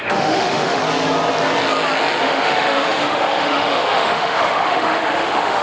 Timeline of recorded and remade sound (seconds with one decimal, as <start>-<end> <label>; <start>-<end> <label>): 0.0-0.8 remade; 0.8-2.2 recorded; 2.2-5.6 remade